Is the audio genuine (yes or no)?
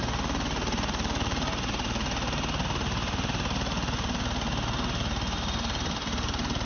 yes